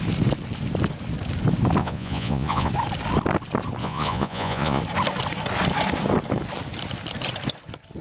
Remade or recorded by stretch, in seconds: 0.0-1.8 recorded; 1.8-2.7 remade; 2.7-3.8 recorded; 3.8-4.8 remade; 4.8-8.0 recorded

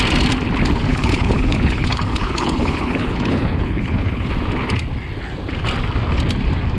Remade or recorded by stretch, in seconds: 0.0-0.9 recorded; 0.9-4.3 remade; 4.3-6.8 recorded

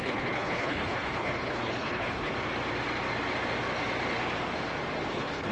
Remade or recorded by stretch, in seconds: 0.0-2.3 remade; 2.3-5.1 recorded; 5.1-5.5 remade

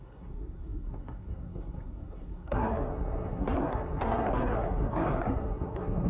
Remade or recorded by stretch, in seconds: 0.0-6.1 remade

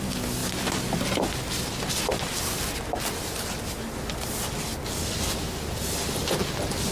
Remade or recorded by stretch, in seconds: 0.0-6.9 recorded